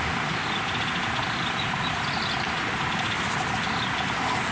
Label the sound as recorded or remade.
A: recorded